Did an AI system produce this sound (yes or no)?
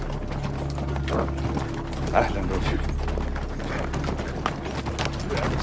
no